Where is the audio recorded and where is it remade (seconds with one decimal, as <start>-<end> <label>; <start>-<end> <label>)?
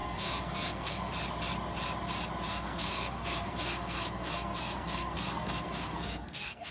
0.0-1.1 remade; 1.1-2.5 recorded; 2.5-6.7 remade